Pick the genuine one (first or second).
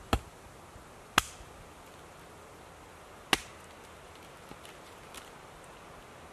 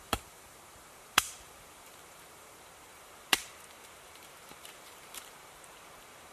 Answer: first